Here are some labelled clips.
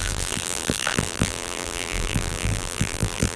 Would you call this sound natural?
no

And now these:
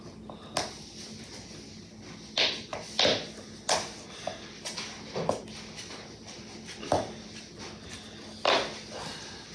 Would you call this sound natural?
yes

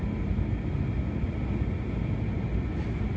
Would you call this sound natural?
yes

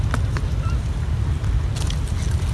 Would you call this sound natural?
yes